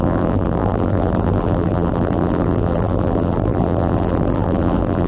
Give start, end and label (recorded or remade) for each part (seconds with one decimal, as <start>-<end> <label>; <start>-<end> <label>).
0.0-5.1 remade